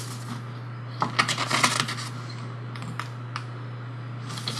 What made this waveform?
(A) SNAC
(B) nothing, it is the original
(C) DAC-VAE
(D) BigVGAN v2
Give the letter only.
B